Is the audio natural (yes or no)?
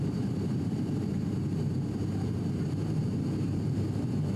no